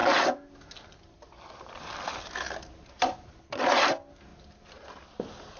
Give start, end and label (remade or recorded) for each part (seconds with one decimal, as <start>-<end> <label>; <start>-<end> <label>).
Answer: 0.0-5.6 recorded